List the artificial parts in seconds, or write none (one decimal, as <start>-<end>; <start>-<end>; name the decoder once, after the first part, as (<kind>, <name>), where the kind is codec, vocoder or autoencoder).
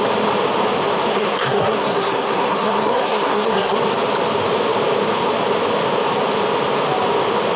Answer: 1.1-3.8 (codec, SNAC)